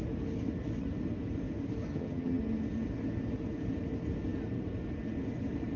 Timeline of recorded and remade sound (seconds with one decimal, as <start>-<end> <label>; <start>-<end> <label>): 0.0-1.9 recorded; 1.9-2.4 remade; 2.4-5.8 recorded